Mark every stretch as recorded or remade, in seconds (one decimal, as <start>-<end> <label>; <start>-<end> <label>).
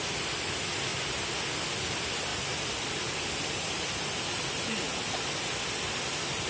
0.0-6.5 recorded